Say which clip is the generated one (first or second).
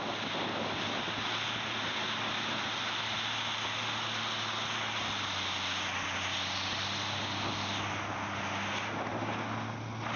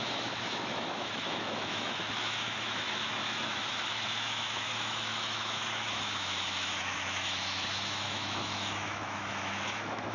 second